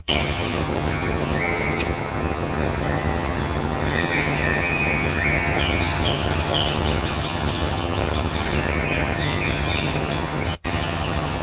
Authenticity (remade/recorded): remade